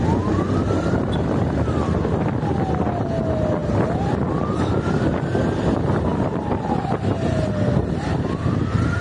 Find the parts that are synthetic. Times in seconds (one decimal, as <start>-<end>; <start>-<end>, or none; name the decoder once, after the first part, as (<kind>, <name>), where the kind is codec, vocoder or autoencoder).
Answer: none